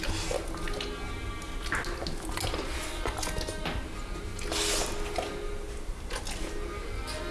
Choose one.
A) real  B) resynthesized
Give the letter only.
A